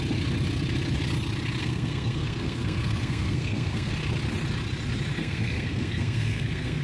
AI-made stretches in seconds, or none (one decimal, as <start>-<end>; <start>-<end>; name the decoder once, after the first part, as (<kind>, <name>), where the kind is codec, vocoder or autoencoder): 1.6-3.9 (codec, SNAC); 5.2-6.8